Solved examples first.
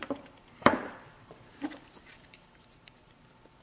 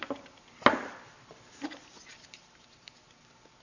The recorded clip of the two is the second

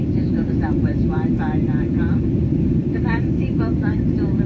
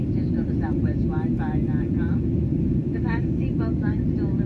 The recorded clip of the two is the second